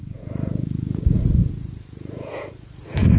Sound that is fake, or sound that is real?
fake